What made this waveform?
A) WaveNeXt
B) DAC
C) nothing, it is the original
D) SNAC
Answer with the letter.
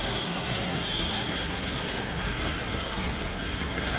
D